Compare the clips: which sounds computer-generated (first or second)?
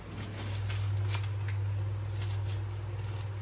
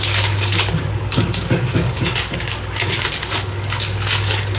second